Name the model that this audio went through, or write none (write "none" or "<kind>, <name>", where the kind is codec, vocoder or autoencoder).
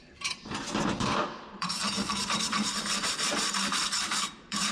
vocoder, BigVGAN v2